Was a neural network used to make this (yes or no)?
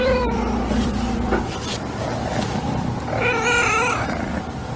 yes